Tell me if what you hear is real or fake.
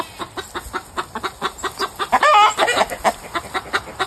real